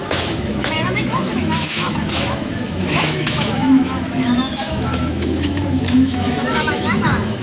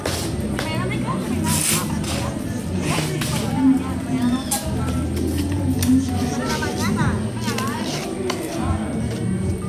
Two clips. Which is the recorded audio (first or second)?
second